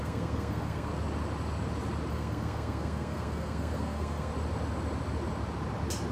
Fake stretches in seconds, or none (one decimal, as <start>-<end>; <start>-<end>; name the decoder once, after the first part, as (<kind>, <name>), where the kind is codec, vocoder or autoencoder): 0.0-0.9 (codec, SNAC); 2.1-4.3